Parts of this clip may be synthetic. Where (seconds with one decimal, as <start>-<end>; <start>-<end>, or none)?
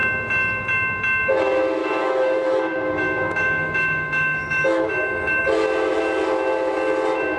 1.8-5.4